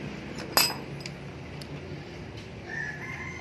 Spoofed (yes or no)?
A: no